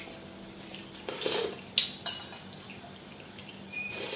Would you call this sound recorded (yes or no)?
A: yes